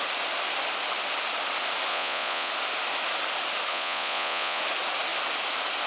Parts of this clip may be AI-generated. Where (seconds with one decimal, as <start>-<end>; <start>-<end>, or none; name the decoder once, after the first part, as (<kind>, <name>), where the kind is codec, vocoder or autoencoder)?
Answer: 1.9-2.5 (vocoder, Vocos); 3.7-4.6